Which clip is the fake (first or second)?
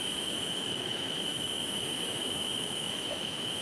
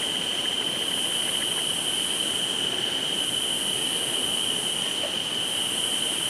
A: first